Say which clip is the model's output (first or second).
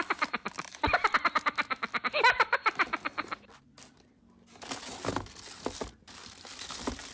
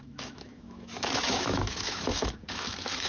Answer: second